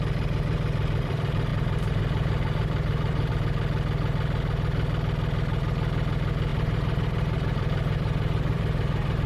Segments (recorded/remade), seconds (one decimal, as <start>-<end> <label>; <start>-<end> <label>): 0.0-1.5 recorded; 1.5-3.3 remade; 3.3-6.5 recorded; 6.5-9.3 remade

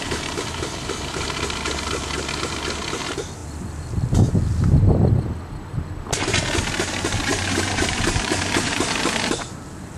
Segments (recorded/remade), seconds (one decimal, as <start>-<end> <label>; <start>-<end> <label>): 0.0-7.3 recorded; 7.3-8.8 remade; 8.8-10.0 recorded

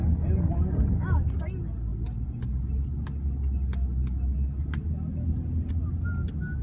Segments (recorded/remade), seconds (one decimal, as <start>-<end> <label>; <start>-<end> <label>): 0.0-6.6 recorded

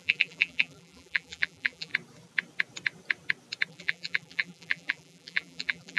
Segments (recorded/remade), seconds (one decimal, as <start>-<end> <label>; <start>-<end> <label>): 0.0-1.9 remade; 1.9-3.7 recorded; 3.7-6.0 remade

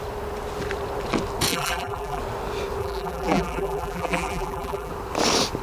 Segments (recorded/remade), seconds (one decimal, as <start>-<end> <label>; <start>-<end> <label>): 0.0-1.5 recorded; 1.5-2.2 remade; 2.2-2.8 recorded; 2.8-4.9 remade; 4.9-5.6 recorded

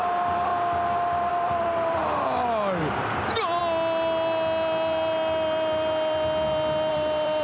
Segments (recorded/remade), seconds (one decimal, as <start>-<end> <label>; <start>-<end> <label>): 0.0-0.5 remade; 0.5-1.3 recorded; 1.3-2.0 remade; 2.0-2.8 recorded; 2.8-3.6 remade; 3.6-6.9 recorded; 6.9-7.4 remade

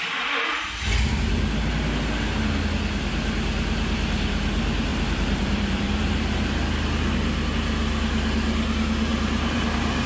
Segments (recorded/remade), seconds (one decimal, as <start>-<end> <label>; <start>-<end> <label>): 0.0-4.9 recorded; 4.9-6.6 remade; 6.6-9.1 recorded; 9.1-10.1 remade